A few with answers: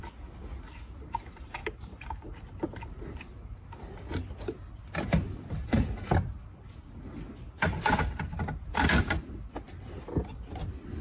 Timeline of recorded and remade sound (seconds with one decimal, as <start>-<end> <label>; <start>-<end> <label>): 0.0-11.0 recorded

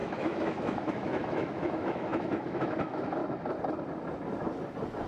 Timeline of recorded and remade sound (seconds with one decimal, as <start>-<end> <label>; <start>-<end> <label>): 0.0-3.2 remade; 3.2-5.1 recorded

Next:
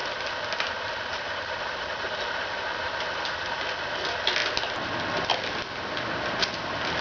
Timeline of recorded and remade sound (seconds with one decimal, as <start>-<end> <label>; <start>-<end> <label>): 0.0-7.0 recorded

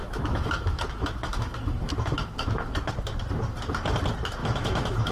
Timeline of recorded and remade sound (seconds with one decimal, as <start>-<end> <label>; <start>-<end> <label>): 0.0-2.7 remade; 2.7-4.4 recorded; 4.4-5.1 remade